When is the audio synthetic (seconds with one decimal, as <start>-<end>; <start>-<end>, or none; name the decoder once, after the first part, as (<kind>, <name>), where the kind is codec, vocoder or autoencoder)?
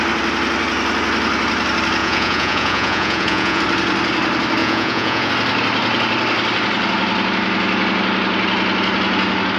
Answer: 2.0-3.6 (vocoder, Vocos); 4.6-5.3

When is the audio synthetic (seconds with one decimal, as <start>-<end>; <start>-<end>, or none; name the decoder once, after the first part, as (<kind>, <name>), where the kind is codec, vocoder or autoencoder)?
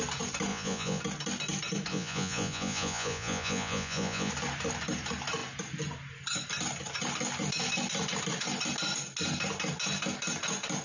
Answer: 0.5-1.0 (vocoder, Vocos); 1.9-4.3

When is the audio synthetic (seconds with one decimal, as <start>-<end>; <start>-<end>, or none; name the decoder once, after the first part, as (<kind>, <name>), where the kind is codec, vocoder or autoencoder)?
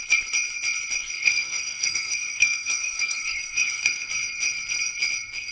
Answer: 1.0-4.1 (codec, SNAC)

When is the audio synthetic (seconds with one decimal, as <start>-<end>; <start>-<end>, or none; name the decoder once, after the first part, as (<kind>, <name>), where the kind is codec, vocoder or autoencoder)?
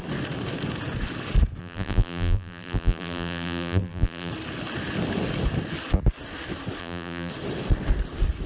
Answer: 1.6-4.3 (vocoder, BigVGAN v2); 6.8-7.3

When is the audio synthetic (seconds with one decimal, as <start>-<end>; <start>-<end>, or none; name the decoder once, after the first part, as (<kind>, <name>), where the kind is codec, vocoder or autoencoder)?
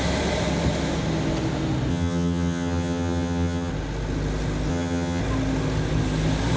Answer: 1.9-3.7 (vocoder, HiFi-GAN); 4.7-5.2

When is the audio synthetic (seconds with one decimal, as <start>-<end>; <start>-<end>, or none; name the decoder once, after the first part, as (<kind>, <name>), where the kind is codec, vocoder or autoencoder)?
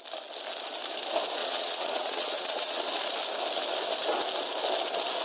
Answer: 1.4-2.8 (vocoder, Vocos)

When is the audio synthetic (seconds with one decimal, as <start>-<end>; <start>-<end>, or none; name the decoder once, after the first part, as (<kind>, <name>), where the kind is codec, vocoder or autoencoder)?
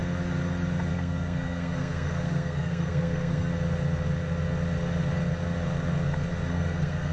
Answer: 0.9-3.5 (codec, SNAC); 6.5-7.1